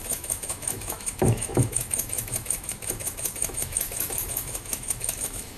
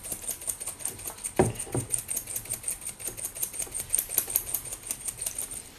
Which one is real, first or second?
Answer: second